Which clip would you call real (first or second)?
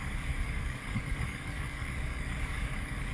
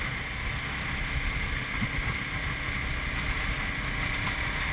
second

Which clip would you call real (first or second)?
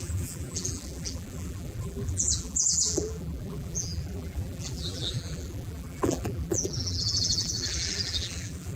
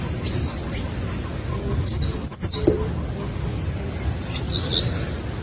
second